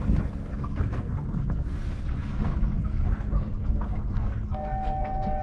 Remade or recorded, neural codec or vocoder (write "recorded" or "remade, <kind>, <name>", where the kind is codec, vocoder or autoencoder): remade, codec, SNAC